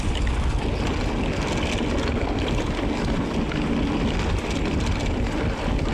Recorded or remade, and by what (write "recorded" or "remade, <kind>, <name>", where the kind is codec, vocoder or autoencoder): recorded